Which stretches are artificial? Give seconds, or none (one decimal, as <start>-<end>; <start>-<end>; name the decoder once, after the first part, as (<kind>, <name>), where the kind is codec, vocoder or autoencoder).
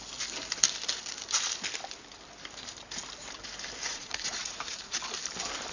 3.9-4.9 (vocoder, Vocos)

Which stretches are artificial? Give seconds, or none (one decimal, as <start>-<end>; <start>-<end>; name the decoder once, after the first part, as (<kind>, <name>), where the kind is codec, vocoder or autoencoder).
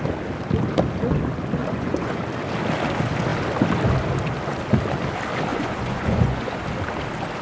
1.6-2.2 (vocoder, Vocos); 5.5-6.6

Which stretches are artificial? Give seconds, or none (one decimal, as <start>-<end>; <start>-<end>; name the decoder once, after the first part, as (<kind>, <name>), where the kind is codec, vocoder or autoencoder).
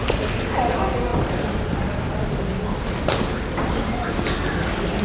none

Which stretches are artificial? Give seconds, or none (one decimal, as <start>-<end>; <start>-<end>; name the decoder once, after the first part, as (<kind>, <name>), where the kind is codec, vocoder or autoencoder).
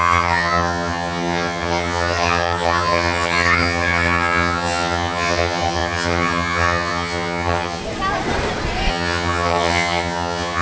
0.0-7.8 (vocoder, HiFi-GAN); 8.9-10.6